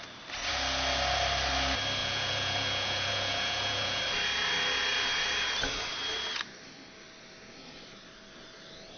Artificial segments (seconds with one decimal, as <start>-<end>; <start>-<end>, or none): 2.0-4.0